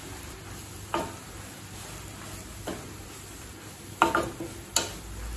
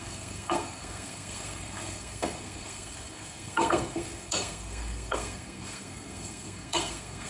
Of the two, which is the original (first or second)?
first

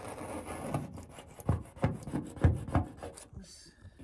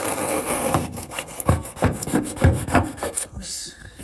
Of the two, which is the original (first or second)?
first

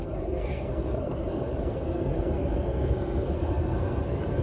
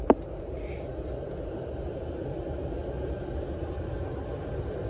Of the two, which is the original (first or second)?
second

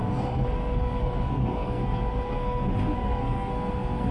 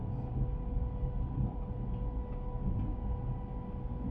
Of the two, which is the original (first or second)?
second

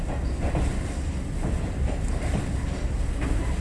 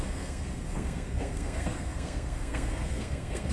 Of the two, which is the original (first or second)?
first